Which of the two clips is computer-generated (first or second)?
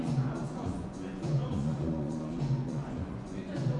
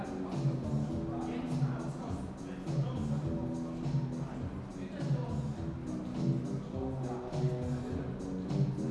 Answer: first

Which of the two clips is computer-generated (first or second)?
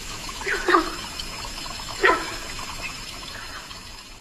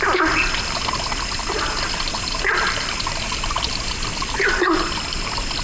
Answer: first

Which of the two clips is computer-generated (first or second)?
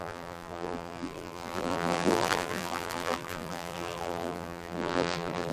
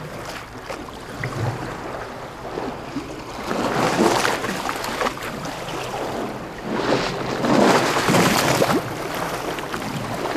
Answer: first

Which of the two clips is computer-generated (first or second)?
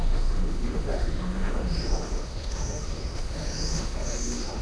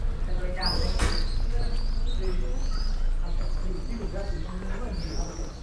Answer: first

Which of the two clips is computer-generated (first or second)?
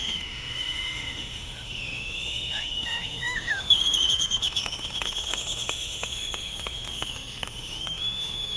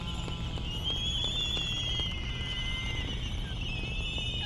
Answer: first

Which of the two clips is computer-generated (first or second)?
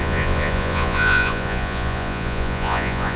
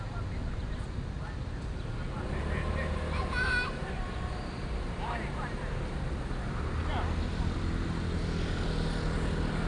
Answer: first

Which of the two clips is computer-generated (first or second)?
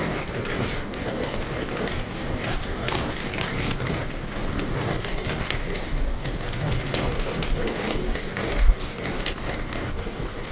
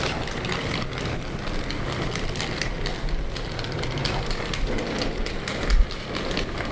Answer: first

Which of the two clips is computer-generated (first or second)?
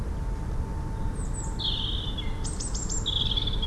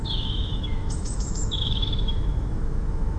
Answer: second